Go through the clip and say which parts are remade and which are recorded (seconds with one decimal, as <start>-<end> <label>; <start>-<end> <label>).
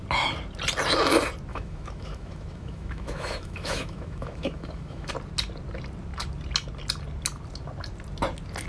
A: 0.0-1.5 recorded; 1.5-5.1 remade; 5.1-8.7 recorded